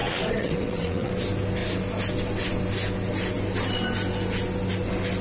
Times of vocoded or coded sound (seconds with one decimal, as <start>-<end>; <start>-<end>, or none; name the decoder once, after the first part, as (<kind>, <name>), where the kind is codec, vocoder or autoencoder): 0.0-1.1 (vocoder, WaveNeXt)

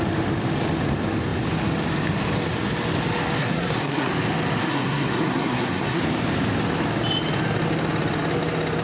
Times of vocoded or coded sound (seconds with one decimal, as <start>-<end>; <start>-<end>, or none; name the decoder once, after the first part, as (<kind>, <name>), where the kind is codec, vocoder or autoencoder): 3.4-4.1 (codec, SNAC); 4.6-6.0

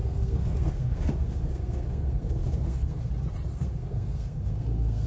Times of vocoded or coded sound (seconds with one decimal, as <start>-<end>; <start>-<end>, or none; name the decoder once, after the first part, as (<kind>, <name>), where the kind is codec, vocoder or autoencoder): 0.0-3.1 (codec, SNAC); 3.5-5.1

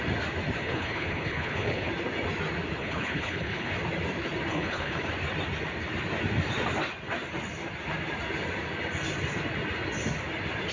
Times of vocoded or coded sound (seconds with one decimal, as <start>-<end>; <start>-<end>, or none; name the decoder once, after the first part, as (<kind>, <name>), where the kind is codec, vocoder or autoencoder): 0.6-1.9 (codec, HILCodec); 2.8-3.7; 4.5-5.1

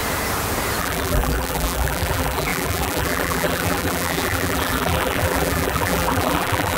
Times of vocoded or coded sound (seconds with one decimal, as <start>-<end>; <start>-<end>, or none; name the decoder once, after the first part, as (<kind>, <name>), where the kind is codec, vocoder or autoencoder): 0.8-6.8 (vocoder, BigVGAN v2)

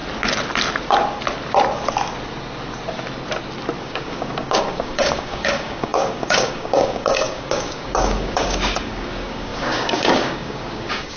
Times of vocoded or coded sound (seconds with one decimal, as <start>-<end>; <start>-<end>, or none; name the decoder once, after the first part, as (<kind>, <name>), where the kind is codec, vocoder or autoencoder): 3.8-11.2 (codec, DAC)